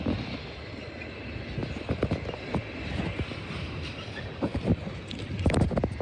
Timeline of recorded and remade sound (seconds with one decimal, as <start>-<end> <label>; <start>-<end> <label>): 0.0-1.6 recorded; 1.6-2.9 remade; 2.9-6.0 recorded